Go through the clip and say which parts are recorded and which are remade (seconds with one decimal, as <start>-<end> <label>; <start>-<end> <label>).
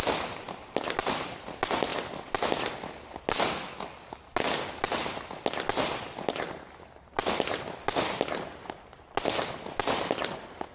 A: 0.0-10.7 recorded